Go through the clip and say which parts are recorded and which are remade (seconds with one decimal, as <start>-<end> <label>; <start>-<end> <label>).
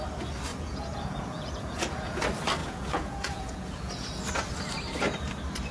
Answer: 0.0-0.5 recorded; 0.5-2.2 remade; 2.2-2.6 recorded; 2.6-4.2 remade; 4.2-5.7 recorded